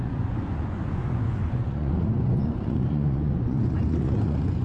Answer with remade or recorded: remade